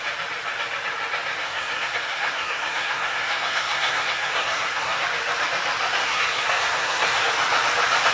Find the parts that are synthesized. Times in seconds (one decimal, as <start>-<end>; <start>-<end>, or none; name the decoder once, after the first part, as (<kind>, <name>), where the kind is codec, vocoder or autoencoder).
1.4-5.0 (codec, SNAC); 6.0-7.3